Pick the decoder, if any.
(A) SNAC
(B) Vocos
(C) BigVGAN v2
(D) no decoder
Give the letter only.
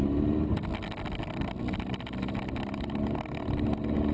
D